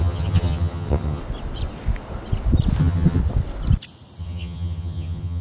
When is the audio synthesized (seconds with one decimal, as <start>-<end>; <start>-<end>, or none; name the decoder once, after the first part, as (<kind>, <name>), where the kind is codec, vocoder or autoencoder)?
0.0-1.2 (vocoder, HiFi-GAN); 2.8-3.2; 4.2-5.4